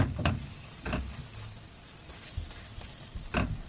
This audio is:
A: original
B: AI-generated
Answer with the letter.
A